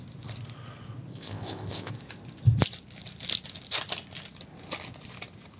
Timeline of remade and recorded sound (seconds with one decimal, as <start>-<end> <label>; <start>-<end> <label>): 0.0-1.1 recorded; 1.1-1.9 remade; 1.9-5.6 recorded